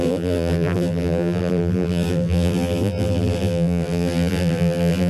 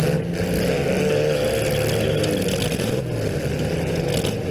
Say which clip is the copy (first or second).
first